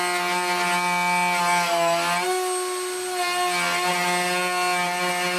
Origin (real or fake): real